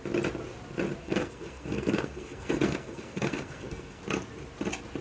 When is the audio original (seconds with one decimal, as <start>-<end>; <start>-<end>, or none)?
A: 0.0-1.0; 4.0-5.0